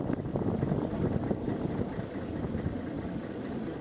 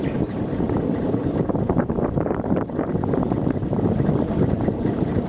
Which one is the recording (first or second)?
first